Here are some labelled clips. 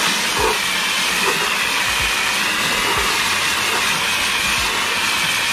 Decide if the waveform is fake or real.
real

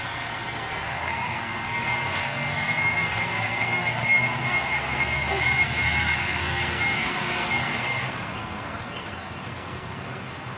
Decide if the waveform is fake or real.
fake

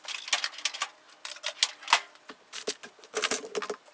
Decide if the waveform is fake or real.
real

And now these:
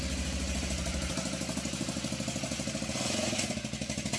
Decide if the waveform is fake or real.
real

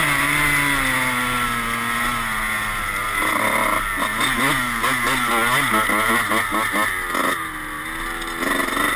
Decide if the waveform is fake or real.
real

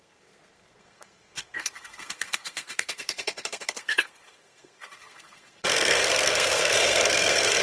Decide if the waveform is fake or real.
fake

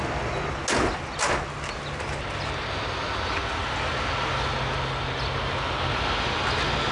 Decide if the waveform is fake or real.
real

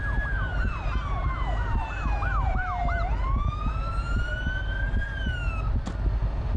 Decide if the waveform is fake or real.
real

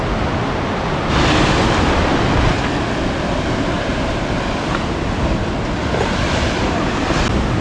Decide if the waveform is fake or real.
real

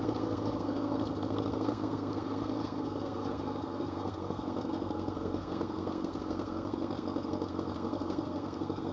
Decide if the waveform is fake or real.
fake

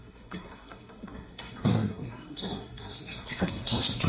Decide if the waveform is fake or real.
fake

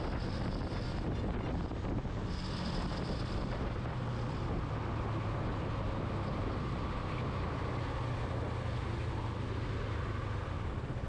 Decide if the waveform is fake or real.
real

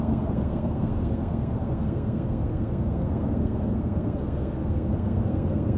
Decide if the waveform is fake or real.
fake